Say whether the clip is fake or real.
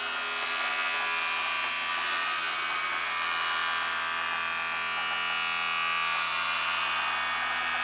real